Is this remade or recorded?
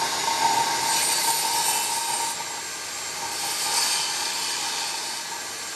recorded